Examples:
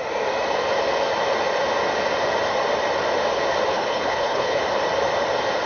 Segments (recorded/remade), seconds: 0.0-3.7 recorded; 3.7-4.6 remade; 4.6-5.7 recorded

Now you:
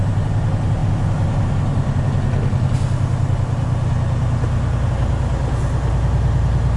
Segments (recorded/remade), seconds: 0.0-6.8 recorded

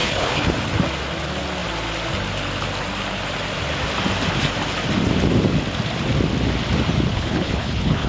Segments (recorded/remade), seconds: 0.0-0.5 remade; 0.5-7.1 recorded; 7.1-8.1 remade

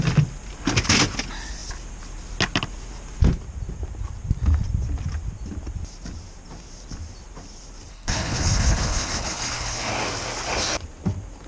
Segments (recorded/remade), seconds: 0.0-7.9 recorded; 7.9-9.9 remade; 9.9-11.5 recorded

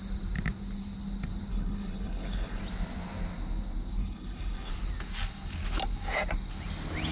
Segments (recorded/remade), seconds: 0.0-1.5 recorded; 1.5-2.6 remade; 2.6-4.0 recorded; 4.0-4.7 remade; 4.7-7.1 recorded

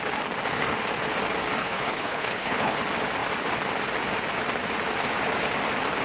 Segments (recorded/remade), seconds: 0.0-1.6 recorded; 1.6-2.8 remade; 2.8-6.0 recorded